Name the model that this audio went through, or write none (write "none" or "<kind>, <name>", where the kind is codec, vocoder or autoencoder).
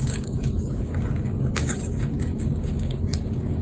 codec, DAC